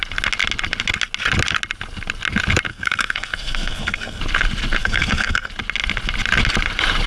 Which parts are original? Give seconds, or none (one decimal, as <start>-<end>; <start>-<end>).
0.0-2.7; 4.2-4.8; 5.5-7.1